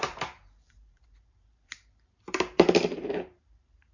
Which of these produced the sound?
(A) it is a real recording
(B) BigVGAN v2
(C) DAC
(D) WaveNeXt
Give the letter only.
B